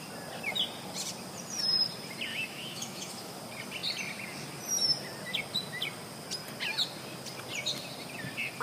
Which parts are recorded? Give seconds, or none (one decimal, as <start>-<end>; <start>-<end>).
0.0-2.3; 3.4-8.6